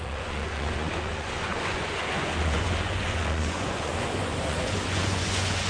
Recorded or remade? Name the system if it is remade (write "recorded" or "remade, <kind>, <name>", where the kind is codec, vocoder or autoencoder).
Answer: remade, vocoder, Vocos